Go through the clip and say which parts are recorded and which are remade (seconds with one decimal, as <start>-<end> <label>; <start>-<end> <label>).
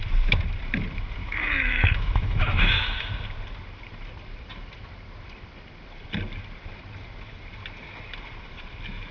0.0-1.2 recorded; 1.2-3.1 remade; 3.1-9.1 recorded